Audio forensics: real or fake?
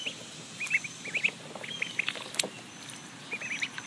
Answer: real